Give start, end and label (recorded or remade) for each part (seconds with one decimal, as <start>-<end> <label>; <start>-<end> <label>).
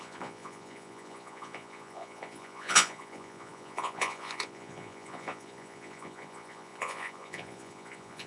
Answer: 0.0-8.3 remade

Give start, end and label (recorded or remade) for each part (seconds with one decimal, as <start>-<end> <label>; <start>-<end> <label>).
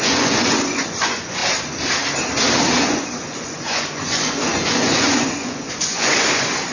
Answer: 0.0-1.4 remade; 1.4-2.8 recorded; 2.8-6.7 remade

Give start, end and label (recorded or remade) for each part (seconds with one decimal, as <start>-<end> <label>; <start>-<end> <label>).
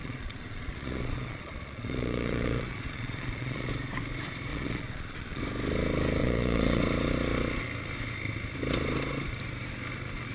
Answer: 0.0-3.7 remade; 3.7-4.5 recorded; 4.5-5.4 remade; 5.4-6.2 recorded; 6.2-6.8 remade; 6.8-10.3 recorded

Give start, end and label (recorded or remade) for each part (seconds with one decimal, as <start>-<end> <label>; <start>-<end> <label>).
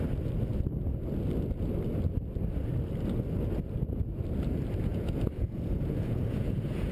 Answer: 0.0-4.9 recorded; 4.9-6.9 remade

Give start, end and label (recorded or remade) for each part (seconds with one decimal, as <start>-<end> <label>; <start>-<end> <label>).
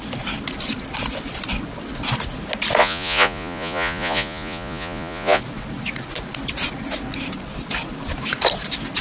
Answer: 0.0-2.8 recorded; 2.8-5.4 remade; 5.4-9.0 recorded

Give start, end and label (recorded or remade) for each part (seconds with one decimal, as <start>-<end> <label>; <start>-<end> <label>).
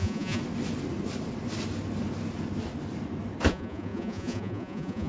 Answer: 0.0-0.4 remade; 0.4-3.5 recorded; 3.5-5.1 remade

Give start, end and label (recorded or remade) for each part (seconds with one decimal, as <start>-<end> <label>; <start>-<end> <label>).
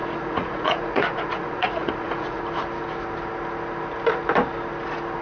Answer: 0.0-2.4 remade; 2.4-5.2 recorded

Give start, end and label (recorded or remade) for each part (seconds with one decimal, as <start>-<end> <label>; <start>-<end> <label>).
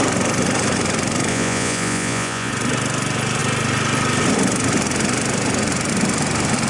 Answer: 0.0-1.3 recorded; 1.3-2.5 remade; 2.5-6.7 recorded